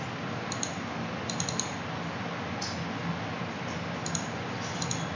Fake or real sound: real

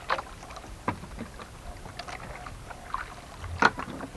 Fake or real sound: real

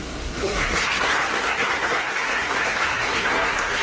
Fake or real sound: fake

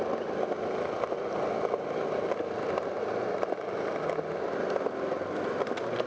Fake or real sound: real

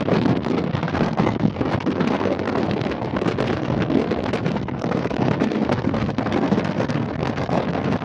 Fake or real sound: fake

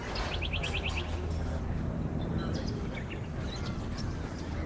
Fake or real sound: real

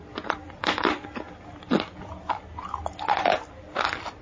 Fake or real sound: real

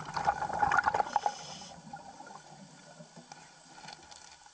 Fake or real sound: real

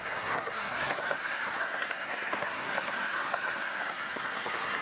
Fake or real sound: fake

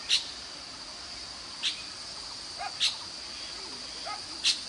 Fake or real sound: real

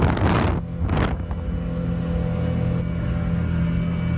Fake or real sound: real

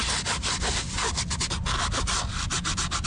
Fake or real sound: real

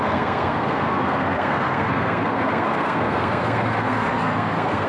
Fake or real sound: fake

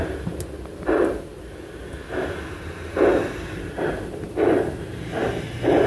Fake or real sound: real